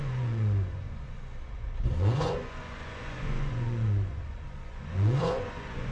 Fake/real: fake